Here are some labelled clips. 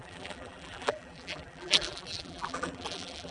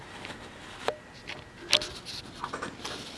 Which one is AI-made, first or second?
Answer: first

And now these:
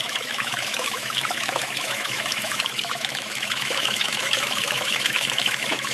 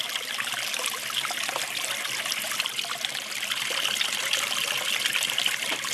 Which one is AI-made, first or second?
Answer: first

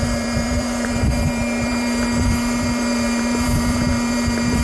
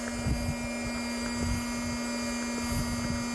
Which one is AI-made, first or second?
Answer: first